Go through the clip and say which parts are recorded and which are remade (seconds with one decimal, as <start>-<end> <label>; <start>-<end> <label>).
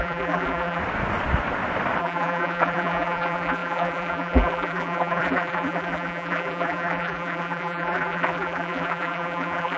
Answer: 0.0-0.8 remade; 0.8-2.0 recorded; 2.0-9.8 remade